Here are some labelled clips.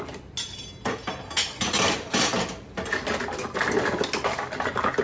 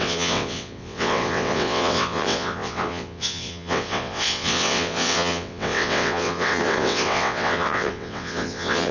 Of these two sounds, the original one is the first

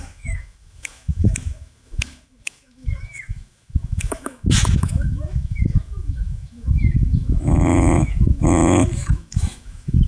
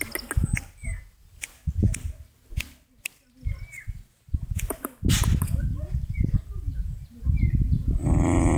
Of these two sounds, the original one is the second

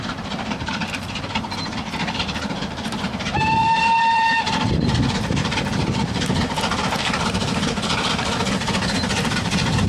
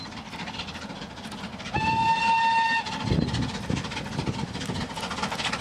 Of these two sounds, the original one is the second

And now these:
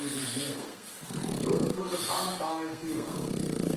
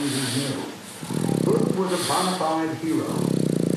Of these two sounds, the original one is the second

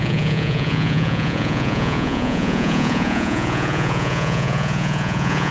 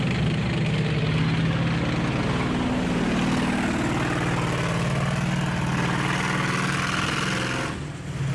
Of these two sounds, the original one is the second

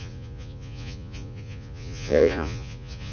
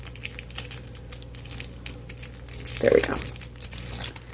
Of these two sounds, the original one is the second